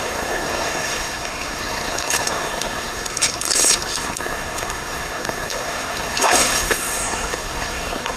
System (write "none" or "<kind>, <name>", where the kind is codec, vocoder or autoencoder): codec, SNAC